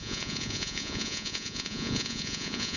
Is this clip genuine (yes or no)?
no